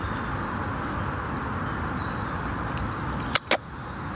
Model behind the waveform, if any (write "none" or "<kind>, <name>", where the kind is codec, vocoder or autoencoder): none